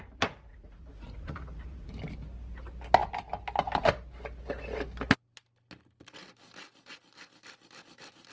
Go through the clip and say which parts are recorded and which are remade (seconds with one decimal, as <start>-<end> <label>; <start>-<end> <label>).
0.0-0.5 recorded; 0.5-1.9 remade; 1.9-8.3 recorded